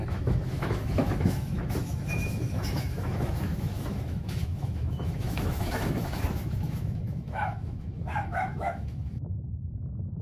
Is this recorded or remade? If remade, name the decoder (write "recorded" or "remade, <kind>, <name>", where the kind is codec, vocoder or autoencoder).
remade, autoencoder, DAC-VAE